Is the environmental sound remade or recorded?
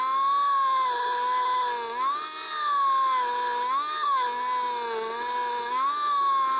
recorded